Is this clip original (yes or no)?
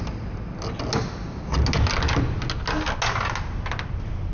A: yes